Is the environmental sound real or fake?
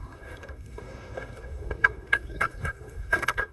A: fake